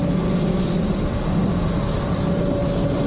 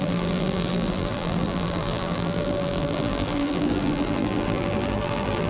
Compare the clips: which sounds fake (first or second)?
second